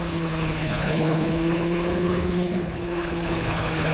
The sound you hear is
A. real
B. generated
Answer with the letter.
B